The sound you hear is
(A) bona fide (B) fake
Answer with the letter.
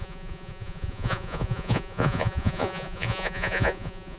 B